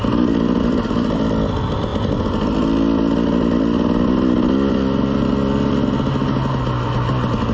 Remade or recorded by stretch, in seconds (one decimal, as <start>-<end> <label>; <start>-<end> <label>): 0.0-7.5 recorded